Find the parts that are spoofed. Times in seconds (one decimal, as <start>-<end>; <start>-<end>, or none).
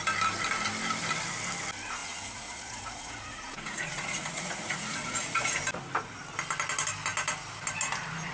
2.0-5.6